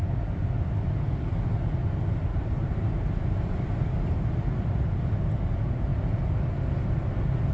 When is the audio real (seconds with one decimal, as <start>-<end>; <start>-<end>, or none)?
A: 0.0-2.3; 3.8-7.5